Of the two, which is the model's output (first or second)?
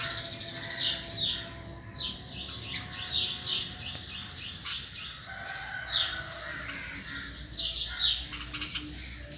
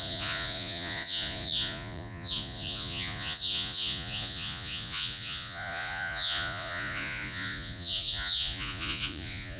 second